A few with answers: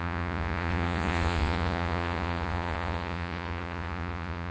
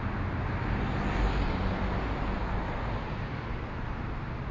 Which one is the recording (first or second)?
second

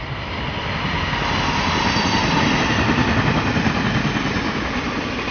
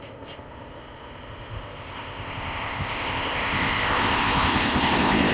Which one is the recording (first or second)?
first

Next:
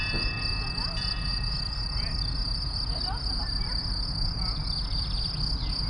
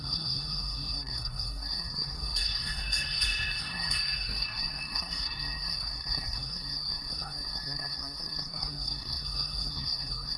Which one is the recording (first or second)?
first